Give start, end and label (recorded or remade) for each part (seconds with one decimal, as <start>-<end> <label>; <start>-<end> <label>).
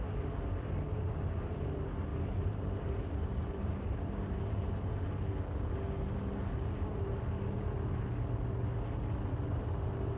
0.0-2.1 recorded; 2.1-4.9 remade; 4.9-10.2 recorded